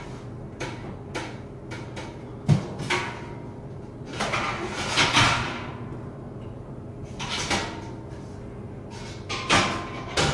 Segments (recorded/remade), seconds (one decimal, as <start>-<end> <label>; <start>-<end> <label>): 0.0-10.3 recorded